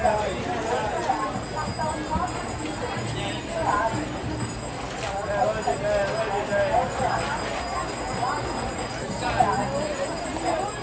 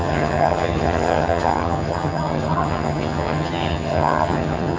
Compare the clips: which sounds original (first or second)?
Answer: first